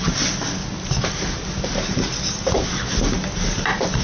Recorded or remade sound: recorded